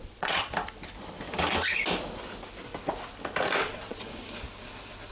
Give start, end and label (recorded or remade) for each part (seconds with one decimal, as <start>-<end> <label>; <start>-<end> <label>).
0.0-0.5 remade; 0.5-3.6 recorded; 3.6-4.2 remade; 4.2-5.1 recorded